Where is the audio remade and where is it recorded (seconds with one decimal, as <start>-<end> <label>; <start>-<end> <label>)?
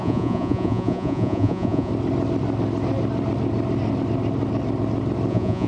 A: 0.0-1.9 remade; 1.9-5.3 recorded; 5.3-5.7 remade